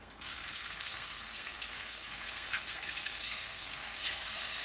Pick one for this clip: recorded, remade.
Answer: remade